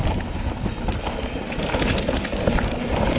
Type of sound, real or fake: real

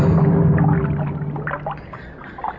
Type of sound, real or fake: real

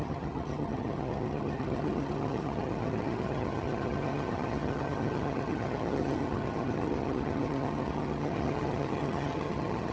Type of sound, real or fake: fake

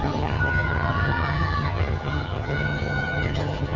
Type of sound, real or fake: fake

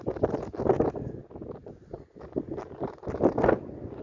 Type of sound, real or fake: real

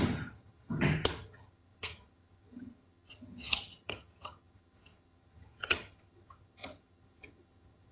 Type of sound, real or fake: fake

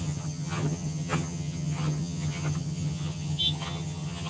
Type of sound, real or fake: fake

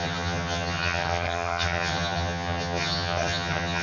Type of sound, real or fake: fake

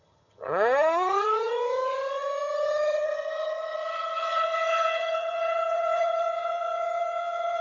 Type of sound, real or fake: fake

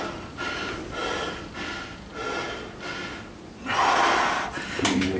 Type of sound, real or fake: real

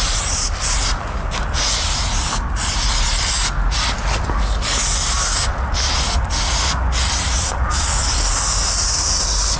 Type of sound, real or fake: real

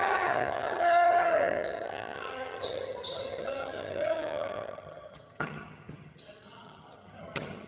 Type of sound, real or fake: fake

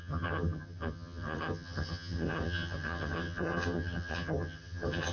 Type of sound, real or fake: fake